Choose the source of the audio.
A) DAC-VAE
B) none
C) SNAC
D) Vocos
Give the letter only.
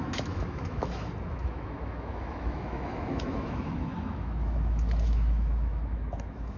A